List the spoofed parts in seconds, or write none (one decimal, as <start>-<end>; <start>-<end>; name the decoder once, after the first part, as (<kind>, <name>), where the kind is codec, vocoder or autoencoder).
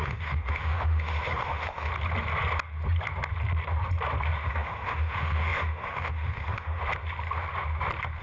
0.0-1.9 (autoencoder, DAC-VAE); 4.5-6.8